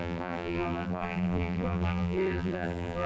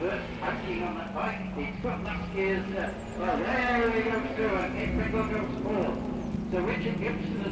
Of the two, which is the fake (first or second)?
first